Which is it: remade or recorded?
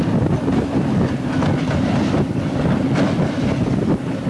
recorded